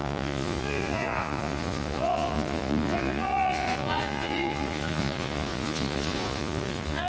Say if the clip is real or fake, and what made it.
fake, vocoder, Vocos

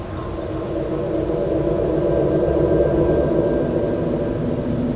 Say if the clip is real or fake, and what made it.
real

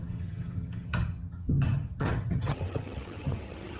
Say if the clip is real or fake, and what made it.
fake, vocoder, HiFi-GAN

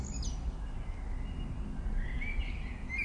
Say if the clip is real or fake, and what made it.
real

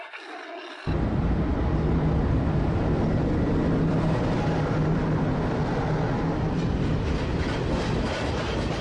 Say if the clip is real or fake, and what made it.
real